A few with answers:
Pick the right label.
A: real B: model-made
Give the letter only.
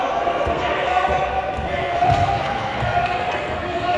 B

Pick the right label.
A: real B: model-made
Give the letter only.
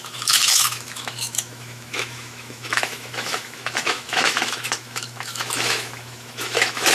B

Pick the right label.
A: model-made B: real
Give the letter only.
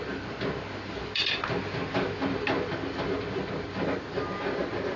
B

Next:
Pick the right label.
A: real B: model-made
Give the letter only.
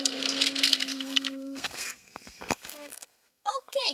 B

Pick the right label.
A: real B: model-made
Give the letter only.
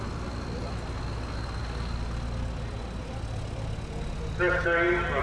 A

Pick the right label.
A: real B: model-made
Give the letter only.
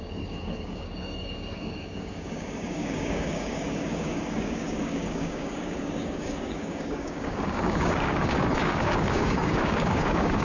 B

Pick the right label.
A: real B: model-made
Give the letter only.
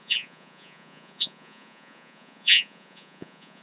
B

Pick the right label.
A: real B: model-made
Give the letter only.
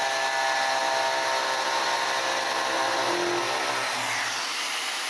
A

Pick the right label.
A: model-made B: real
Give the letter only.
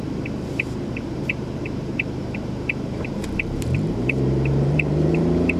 A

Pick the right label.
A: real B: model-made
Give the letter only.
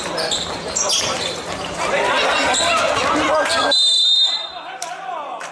A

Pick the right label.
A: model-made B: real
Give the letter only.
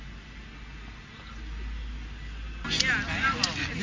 B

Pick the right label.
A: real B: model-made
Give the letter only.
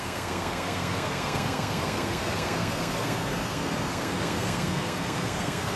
B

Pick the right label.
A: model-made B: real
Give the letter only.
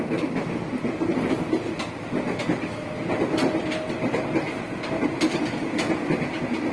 B